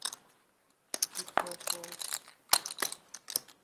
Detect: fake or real real